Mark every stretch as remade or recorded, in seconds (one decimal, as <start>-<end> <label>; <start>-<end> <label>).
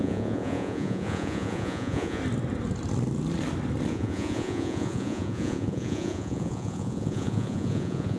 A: 0.0-2.2 remade; 2.2-3.9 recorded; 3.9-8.2 remade